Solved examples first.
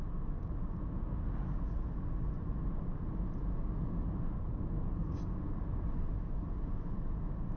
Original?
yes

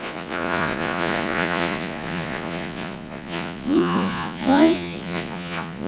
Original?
no